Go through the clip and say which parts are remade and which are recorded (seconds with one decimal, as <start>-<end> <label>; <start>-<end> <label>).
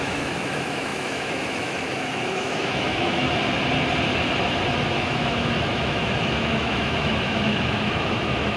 0.0-3.2 remade; 3.2-4.8 recorded; 4.8-8.6 remade